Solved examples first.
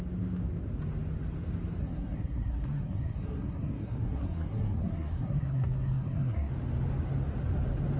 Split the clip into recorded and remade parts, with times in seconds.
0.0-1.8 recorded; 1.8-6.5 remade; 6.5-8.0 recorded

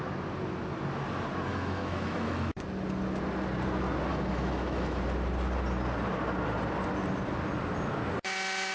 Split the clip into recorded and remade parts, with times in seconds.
0.0-1.5 recorded; 1.5-2.5 remade; 2.5-4.1 recorded; 4.1-5.0 remade; 5.0-8.7 recorded